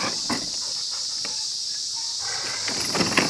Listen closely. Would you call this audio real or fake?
real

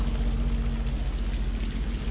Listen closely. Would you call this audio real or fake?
real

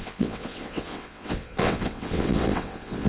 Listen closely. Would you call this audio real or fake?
fake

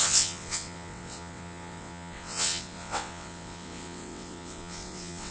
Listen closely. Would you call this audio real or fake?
fake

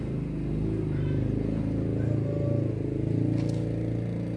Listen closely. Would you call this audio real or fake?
real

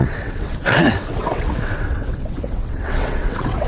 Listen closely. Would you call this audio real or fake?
fake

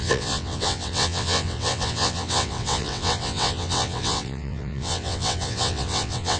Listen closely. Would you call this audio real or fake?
fake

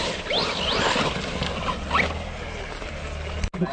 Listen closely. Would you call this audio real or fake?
real